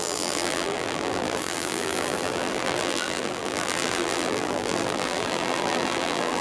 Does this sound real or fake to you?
fake